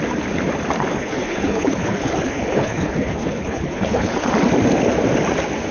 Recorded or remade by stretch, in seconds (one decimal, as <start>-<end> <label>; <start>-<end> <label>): 0.0-0.9 recorded; 0.9-4.3 remade; 4.3-5.7 recorded